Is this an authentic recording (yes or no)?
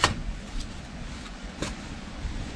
no